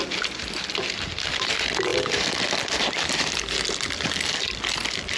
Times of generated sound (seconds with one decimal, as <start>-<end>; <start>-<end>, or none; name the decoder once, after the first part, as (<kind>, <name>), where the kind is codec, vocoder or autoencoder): none